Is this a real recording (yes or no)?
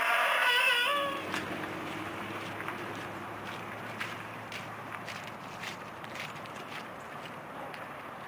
no